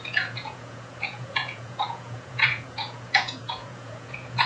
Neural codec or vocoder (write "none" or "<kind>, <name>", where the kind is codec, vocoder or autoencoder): vocoder, Vocos